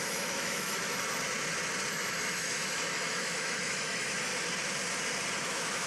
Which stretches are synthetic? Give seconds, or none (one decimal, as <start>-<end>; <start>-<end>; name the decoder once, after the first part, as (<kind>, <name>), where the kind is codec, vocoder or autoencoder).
0.0-0.9 (autoencoder, DAC-VAE); 1.9-4.3; 5.4-5.9